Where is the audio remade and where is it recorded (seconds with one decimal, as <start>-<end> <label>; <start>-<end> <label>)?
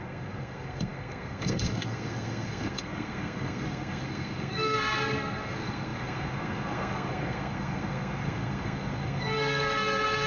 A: 0.0-10.3 remade